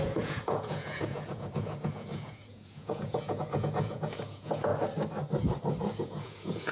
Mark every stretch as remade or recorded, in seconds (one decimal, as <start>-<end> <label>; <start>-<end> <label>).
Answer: 0.0-4.7 remade; 4.7-6.0 recorded; 6.0-6.7 remade